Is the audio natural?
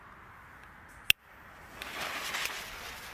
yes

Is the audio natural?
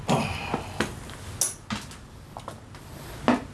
yes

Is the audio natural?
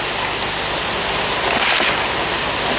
yes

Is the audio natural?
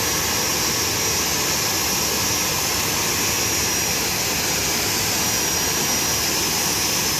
yes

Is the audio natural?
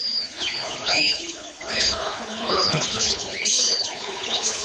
no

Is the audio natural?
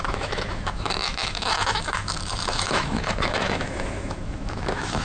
no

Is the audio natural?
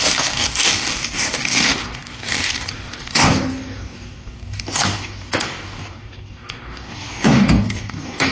no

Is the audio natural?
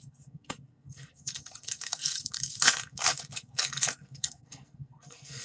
no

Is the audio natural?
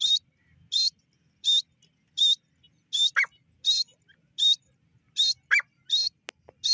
yes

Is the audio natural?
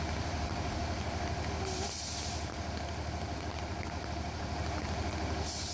yes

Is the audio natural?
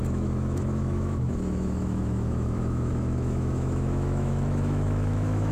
no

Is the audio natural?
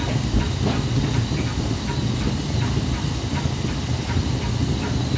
yes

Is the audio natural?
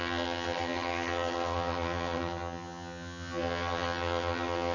no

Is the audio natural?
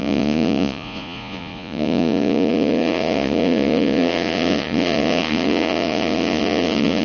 no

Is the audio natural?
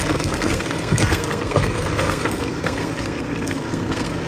no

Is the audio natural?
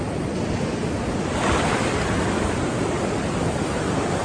no